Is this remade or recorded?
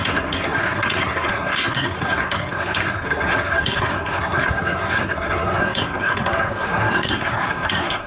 remade